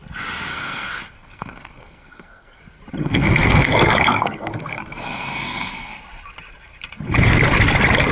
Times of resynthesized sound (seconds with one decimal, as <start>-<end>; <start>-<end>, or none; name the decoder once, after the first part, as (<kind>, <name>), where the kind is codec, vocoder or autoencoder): 0.5-2.6 (codec, SNAC); 3.0-6.0